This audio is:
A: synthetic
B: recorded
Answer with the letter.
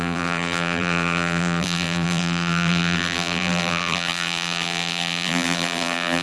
A